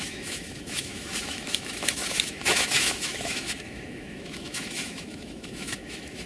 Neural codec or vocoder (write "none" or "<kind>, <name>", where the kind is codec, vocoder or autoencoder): autoencoder, DAC-VAE